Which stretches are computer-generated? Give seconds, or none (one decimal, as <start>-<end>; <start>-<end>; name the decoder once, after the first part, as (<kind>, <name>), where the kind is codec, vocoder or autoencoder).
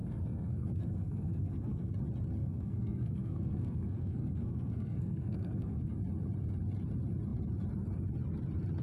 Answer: 0.0-1.9 (codec, SNAC); 2.4-5.9